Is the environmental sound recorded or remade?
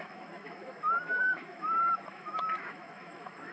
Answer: remade